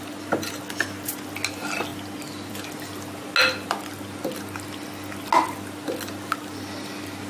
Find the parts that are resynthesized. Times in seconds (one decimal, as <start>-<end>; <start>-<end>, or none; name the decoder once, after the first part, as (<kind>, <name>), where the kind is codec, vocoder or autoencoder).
none